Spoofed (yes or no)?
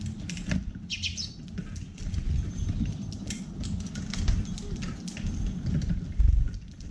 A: no